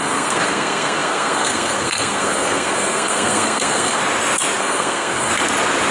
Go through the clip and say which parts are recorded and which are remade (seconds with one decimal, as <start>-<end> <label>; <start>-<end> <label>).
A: 0.0-4.0 remade; 4.0-4.6 recorded; 4.6-5.3 remade; 5.3-5.9 recorded